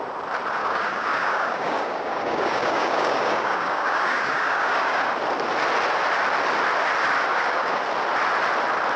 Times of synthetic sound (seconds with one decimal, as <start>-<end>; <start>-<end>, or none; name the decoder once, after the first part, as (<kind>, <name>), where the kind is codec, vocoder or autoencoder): 0.6-5.1 (codec, DAC); 7.3-7.8